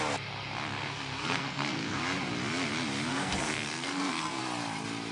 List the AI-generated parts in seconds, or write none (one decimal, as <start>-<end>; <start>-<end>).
0.8-2.0; 3.1-4.4